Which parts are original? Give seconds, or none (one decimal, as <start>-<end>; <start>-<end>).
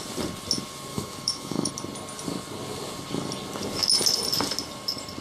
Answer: 0.0-0.9; 1.7-5.2